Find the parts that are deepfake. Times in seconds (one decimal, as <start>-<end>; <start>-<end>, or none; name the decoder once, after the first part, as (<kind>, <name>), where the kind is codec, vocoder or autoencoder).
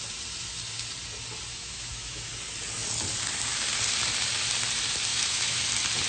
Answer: 1.5-2.3 (autoencoder, DAC-VAE); 5.1-5.6